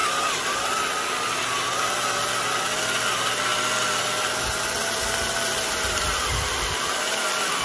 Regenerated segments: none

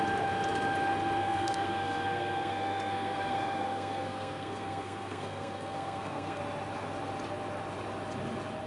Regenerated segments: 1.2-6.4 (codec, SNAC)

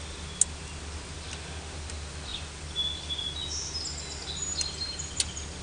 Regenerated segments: none

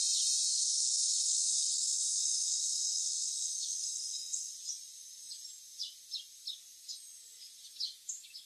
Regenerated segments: 0.5-4.5 (codec, SNAC)

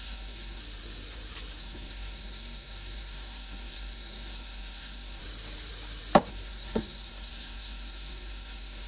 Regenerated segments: 0.0-0.6 (codec, SNAC); 1.6-5.2; 6.3-8.9

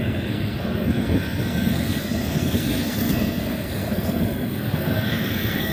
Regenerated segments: 0.0-5.7 (codec, SNAC)

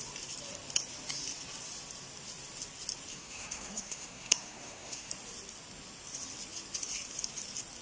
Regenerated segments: 3.1-5.1 (codec, SNAC)